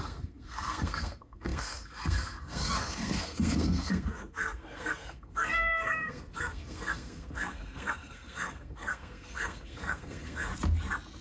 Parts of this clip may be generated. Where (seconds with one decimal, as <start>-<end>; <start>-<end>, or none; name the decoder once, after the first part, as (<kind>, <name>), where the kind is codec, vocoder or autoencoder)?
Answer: 0.0-10.5 (codec, SNAC)